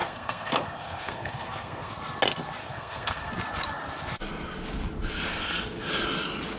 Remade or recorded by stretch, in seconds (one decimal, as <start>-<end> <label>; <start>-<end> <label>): 0.0-1.9 remade; 1.9-2.6 recorded; 2.6-3.3 remade; 3.3-5.3 recorded; 5.3-5.9 remade; 5.9-6.6 recorded